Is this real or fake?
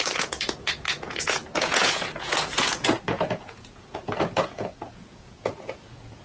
fake